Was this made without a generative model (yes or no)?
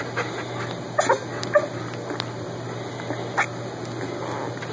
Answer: yes